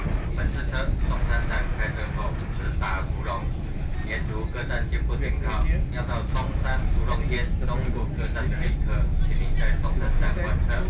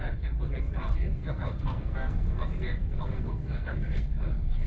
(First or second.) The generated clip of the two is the second